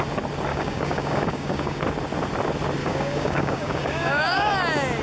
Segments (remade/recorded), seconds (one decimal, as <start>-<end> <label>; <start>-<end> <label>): 0.0-0.5 recorded; 0.5-1.8 remade; 1.8-2.8 recorded; 2.8-4.5 remade; 4.5-5.0 recorded